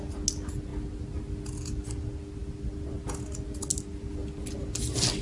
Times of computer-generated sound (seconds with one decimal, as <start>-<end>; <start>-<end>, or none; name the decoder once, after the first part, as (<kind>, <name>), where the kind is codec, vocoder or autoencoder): none